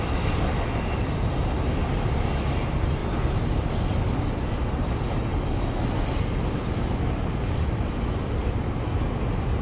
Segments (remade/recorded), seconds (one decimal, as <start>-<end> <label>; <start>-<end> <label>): 0.0-9.6 recorded